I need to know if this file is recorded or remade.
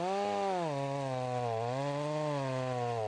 recorded